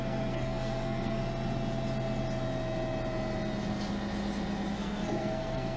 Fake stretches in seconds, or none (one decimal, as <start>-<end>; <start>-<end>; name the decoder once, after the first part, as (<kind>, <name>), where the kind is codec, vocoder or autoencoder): 0.0-1.2 (codec, SNAC); 4.7-5.8